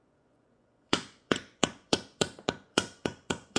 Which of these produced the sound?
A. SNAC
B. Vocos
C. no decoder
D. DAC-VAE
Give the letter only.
B